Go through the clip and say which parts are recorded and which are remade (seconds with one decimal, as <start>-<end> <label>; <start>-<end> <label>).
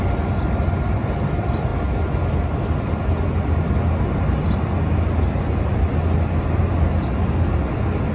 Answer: 0.0-1.7 remade; 1.7-6.6 recorded; 6.6-8.1 remade